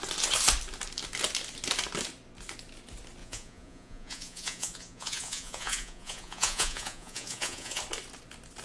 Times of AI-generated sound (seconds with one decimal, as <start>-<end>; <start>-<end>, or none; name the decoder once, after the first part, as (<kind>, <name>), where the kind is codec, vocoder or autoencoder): 3.2-7.8 (vocoder, Vocos)